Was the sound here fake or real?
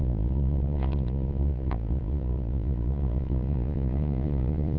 fake